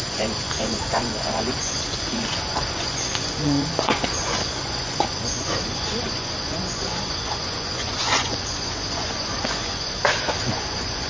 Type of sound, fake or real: fake